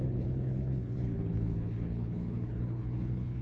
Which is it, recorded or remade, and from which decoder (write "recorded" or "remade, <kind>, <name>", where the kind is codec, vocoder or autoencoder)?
remade, codec, HILCodec